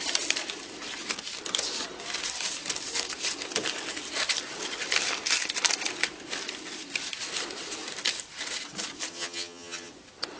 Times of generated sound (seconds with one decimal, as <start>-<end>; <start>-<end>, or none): 9.1-9.9